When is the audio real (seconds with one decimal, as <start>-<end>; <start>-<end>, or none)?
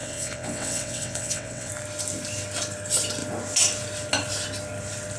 1.7-5.2